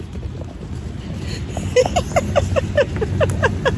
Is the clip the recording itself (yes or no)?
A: yes